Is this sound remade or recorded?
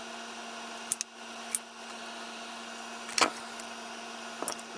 recorded